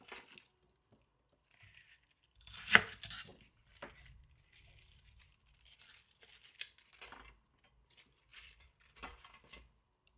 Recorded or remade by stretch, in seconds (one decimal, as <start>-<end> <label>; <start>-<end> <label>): 0.0-8.3 recorded; 8.3-9.2 remade; 9.2-10.2 recorded